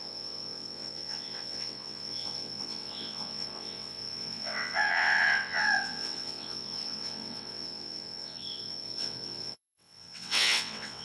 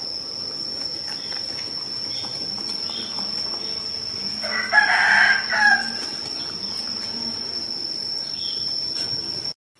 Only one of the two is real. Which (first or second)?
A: second